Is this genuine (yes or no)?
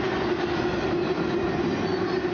yes